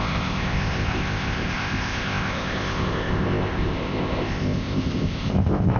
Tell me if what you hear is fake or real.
fake